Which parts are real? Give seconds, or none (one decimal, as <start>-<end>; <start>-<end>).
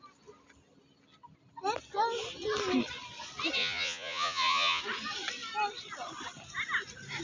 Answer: 0.0-3.6; 4.8-7.2